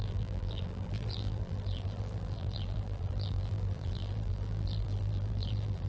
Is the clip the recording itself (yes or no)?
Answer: no